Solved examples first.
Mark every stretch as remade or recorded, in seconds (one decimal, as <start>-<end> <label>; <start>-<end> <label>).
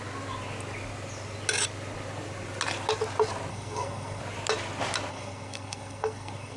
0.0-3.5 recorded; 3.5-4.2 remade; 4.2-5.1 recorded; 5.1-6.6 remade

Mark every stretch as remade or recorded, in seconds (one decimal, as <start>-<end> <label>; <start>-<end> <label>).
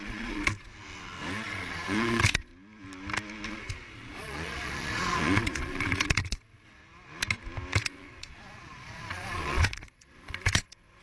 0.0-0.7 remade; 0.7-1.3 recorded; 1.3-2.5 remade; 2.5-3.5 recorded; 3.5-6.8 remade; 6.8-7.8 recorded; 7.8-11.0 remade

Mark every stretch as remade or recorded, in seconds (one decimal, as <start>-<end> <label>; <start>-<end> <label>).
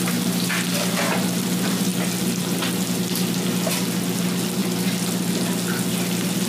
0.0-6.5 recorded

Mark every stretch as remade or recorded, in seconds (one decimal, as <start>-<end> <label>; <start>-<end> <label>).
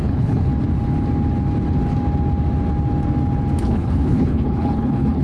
0.0-0.5 remade; 0.5-3.6 recorded; 3.6-5.2 remade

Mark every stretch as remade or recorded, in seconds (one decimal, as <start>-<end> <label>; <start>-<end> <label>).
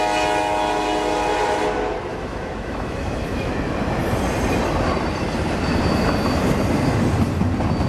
0.0-2.1 recorded; 2.1-3.5 remade; 3.5-7.9 recorded